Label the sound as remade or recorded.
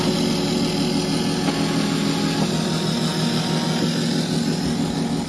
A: recorded